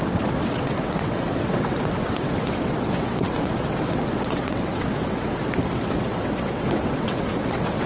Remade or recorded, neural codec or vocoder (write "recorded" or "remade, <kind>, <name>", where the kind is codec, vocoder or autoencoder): remade, vocoder, WaveNeXt